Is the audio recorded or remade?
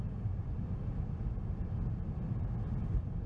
recorded